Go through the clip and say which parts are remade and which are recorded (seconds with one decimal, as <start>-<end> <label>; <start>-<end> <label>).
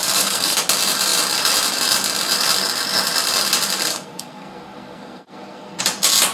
0.0-0.6 remade; 0.6-3.9 recorded; 3.9-5.8 remade; 5.8-6.3 recorded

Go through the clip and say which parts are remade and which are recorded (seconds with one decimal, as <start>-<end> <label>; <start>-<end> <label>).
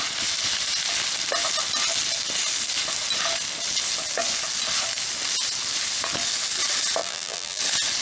0.0-7.0 recorded; 7.0-7.6 remade; 7.6-8.0 recorded